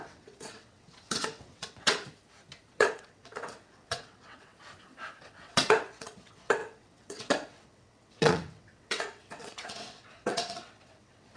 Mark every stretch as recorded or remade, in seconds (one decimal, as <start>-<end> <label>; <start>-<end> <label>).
0.0-2.0 remade; 2.0-2.7 recorded; 2.7-4.5 remade; 4.5-5.2 recorded; 5.2-11.4 remade

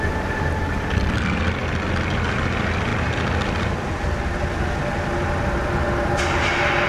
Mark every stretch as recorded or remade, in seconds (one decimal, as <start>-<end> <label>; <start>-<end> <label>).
0.0-2.9 recorded; 2.9-4.0 remade; 4.0-6.9 recorded

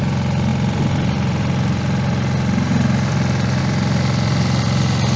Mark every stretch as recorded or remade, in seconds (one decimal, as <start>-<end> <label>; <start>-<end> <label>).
0.0-5.2 recorded